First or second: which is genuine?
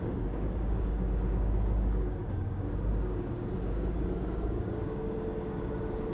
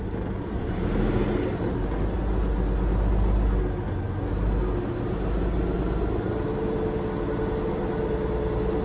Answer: second